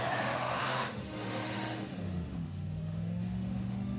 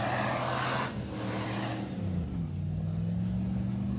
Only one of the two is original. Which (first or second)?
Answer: second